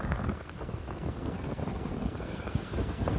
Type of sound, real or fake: fake